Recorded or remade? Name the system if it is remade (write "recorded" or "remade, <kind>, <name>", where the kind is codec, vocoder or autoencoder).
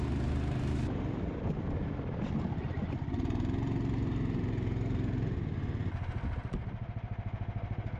recorded